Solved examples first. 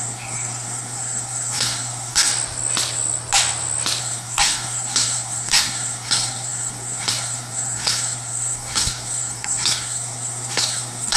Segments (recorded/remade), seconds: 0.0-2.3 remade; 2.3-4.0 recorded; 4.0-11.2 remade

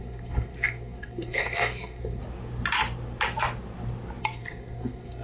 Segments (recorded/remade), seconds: 0.0-2.2 remade; 2.2-4.2 recorded; 4.2-5.2 remade